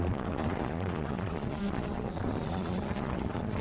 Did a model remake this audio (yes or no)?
yes